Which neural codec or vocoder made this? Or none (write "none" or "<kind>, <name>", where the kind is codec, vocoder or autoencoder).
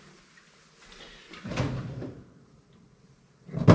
none